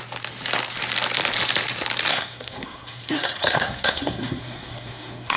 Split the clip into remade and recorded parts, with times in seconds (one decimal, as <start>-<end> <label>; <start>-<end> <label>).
0.0-2.1 recorded; 2.1-5.4 remade